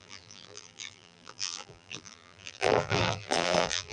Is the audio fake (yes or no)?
yes